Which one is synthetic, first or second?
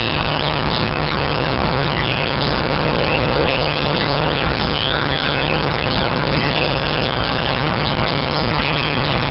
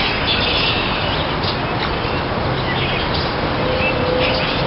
first